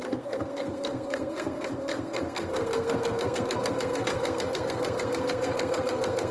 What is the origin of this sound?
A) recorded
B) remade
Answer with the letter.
B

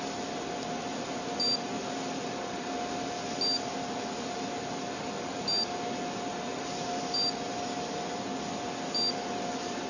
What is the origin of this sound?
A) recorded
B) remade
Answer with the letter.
A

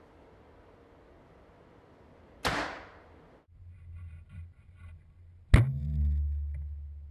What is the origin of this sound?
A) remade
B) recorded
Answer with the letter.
B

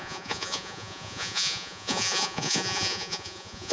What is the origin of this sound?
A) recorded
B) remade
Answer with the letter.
B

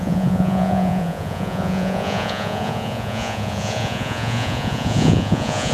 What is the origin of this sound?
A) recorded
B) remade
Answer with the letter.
B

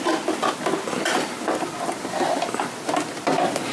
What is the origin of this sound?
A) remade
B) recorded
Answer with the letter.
B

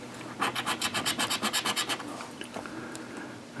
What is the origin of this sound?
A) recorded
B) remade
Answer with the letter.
B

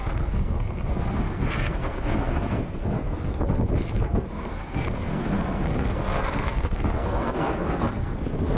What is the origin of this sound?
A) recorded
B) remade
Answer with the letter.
B